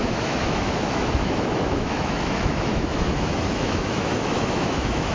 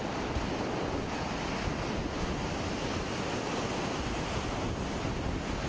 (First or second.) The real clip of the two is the second